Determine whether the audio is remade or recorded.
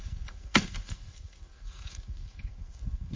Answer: remade